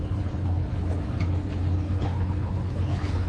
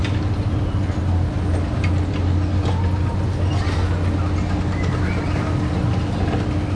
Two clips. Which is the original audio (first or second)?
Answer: second